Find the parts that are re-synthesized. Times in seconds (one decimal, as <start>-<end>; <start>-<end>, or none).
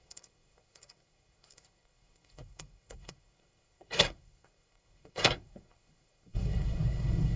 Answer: 0.0-7.4